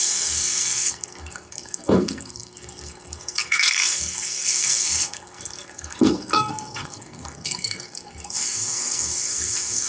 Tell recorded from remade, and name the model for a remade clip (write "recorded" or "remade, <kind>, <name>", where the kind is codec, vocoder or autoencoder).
remade, codec, SNAC